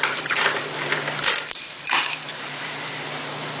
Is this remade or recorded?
remade